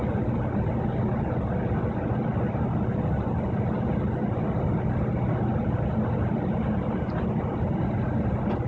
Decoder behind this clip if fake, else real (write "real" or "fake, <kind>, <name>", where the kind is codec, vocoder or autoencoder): real